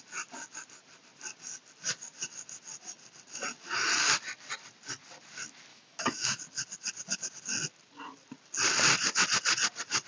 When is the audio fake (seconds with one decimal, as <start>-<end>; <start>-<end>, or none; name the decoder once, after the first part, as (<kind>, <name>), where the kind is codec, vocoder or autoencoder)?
5.7-6.4 (autoencoder, DAC-VAE)